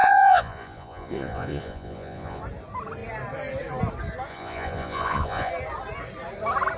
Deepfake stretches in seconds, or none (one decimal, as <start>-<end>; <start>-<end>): 0.0-2.4; 4.3-5.5